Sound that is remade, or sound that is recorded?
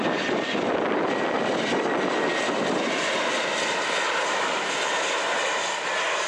recorded